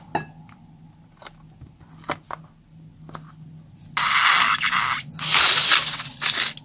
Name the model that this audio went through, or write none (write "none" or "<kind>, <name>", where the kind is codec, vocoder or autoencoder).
none